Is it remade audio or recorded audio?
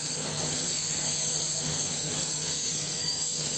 remade